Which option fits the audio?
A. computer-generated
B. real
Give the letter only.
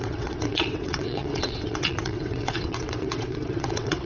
A